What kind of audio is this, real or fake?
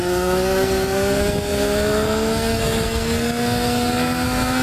fake